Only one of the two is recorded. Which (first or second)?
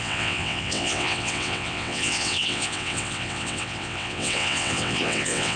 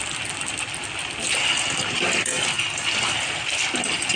second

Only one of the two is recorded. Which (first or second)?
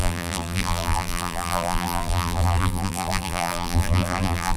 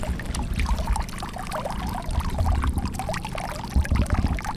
second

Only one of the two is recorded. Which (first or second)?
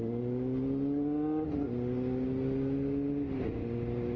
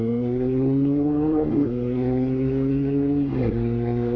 first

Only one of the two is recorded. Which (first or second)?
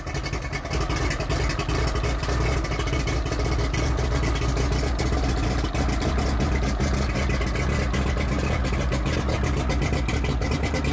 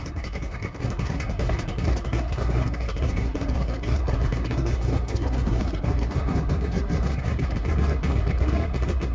first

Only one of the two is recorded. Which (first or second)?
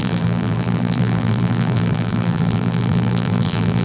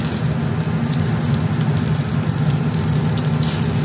second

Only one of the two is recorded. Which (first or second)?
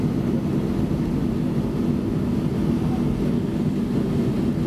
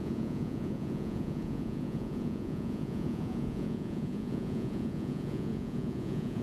first